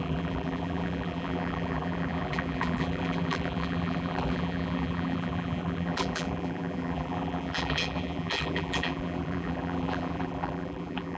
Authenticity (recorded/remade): remade